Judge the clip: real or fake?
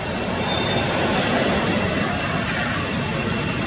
real